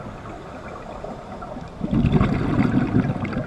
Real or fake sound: real